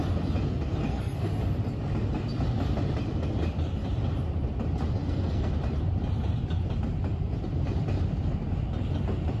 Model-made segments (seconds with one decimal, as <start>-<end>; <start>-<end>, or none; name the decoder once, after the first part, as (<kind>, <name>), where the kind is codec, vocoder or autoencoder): 0.8-1.3 (codec, SNAC); 5.0-5.5